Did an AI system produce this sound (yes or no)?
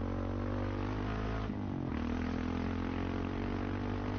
no